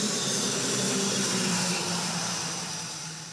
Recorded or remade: remade